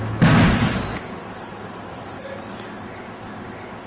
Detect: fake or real real